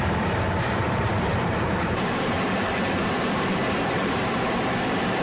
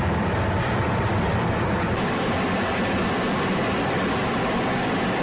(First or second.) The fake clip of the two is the first